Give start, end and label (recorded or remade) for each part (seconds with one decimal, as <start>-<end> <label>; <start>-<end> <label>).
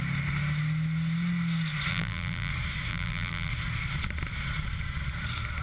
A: 0.0-1.9 recorded; 1.9-2.5 remade; 2.5-2.9 recorded; 2.9-3.5 remade; 3.5-5.6 recorded